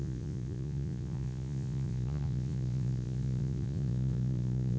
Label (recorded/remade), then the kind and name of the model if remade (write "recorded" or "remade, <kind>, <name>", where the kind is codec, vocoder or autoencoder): remade, vocoder, Vocos